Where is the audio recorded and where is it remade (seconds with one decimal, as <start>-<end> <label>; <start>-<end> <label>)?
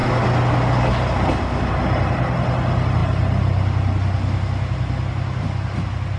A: 0.0-6.2 recorded